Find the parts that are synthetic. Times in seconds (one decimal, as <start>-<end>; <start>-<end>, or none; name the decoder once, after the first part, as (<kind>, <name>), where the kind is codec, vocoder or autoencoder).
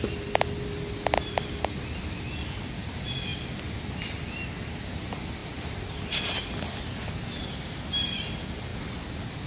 none